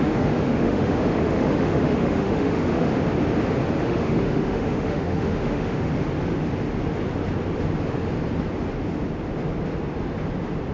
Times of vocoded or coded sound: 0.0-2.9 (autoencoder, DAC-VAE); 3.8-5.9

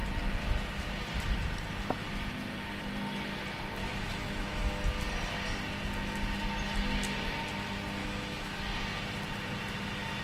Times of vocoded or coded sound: 3.8-4.8 (autoencoder, DAC-VAE); 8.0-8.5

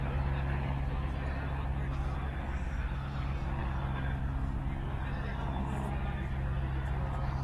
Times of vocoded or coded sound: none